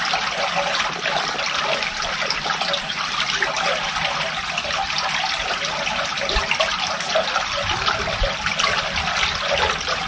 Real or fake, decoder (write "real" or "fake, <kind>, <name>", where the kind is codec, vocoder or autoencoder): real